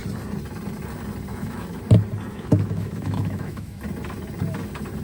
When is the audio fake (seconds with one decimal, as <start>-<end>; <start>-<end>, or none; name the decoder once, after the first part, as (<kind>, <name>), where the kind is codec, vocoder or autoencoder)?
1.3-1.8 (autoencoder, DAC-VAE); 2.3-3.8